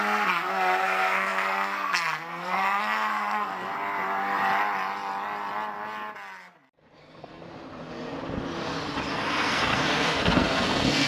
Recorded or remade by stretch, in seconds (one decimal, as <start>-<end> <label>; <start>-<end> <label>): 0.0-3.5 remade; 3.5-7.0 recorded; 7.0-7.4 remade; 7.4-9.1 recorded; 9.1-11.1 remade